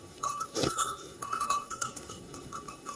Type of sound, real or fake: fake